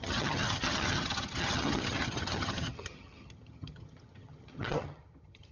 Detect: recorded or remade remade